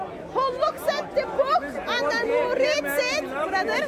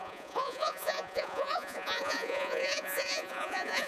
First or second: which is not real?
second